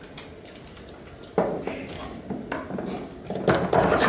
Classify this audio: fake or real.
real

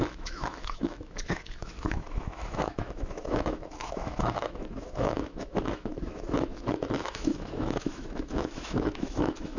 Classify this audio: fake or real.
fake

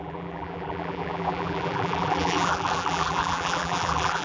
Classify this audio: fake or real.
fake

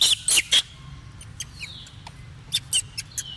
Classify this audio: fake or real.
real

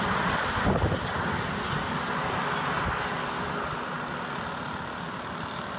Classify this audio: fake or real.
real